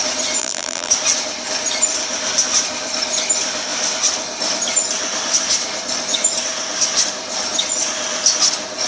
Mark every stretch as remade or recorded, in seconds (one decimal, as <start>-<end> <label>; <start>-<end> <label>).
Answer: 0.0-0.4 recorded; 0.4-0.9 remade; 0.9-8.9 recorded